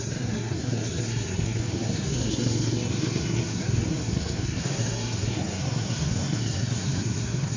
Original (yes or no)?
no